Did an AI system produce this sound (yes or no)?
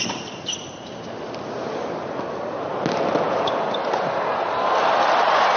no